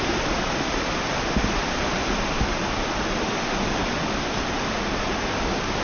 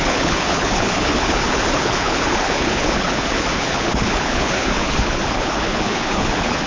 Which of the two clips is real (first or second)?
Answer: first